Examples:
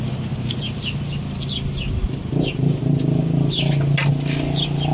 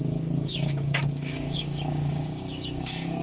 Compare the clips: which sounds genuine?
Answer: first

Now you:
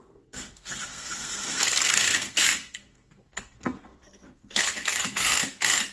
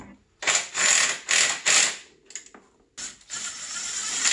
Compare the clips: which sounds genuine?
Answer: second